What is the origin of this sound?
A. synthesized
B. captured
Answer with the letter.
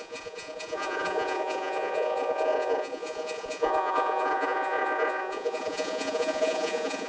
A